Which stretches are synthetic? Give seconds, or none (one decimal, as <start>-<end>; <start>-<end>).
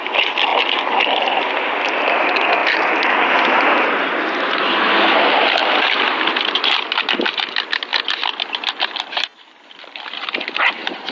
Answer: 0.5-1.0; 2.6-4.6; 5.6-7.0; 7.9-10.7